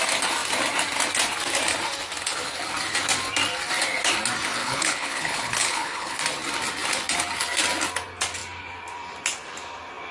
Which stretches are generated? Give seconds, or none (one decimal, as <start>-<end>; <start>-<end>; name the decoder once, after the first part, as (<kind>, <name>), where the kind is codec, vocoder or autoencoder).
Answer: 4.6-6.2 (codec, HILCodec)